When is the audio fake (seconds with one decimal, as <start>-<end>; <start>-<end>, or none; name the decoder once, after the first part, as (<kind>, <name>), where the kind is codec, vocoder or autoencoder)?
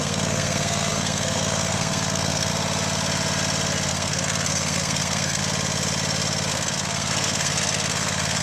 0.0-2.5 (codec, SNAC); 3.9-5.4; 6.5-8.4